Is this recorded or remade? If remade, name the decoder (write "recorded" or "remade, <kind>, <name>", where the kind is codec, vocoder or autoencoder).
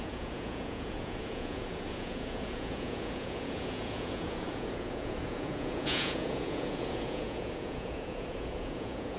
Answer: remade, vocoder, Vocos